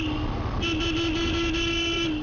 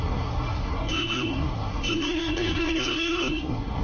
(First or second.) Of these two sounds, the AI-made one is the second